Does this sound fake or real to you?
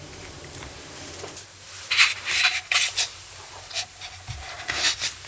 fake